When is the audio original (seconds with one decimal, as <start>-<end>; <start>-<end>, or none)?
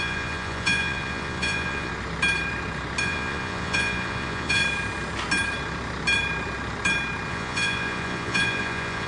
1.9-3.0; 4.6-7.3